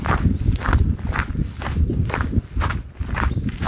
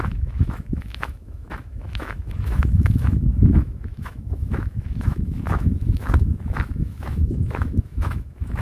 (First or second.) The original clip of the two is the first